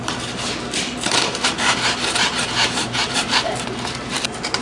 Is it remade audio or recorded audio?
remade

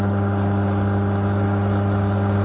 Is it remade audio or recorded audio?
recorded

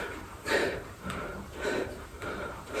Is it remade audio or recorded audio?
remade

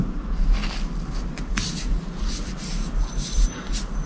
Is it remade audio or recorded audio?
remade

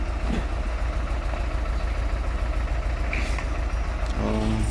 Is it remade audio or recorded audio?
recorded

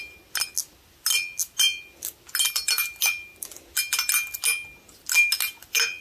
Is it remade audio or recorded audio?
recorded